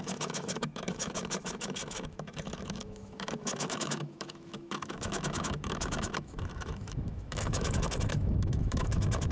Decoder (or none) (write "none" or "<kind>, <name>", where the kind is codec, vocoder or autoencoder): autoencoder, DAC-VAE